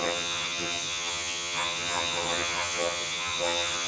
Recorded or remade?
remade